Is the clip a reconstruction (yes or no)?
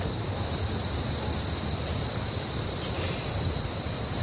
no